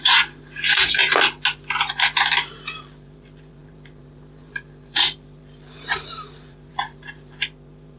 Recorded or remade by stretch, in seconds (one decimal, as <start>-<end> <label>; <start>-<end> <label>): 0.0-1.0 remade; 1.0-1.9 recorded; 1.9-8.0 remade